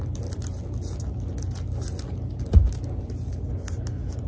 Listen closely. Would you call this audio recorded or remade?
recorded